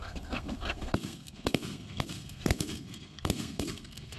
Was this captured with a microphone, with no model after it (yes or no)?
no